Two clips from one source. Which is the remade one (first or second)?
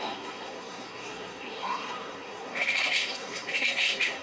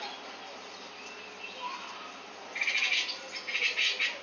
first